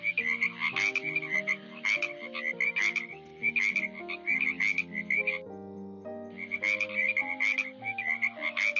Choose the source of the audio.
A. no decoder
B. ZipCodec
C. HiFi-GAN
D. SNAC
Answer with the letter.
A